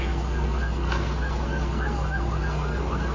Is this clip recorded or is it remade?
remade